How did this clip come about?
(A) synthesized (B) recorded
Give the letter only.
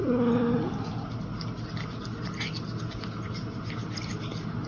B